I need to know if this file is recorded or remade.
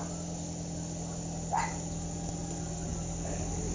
recorded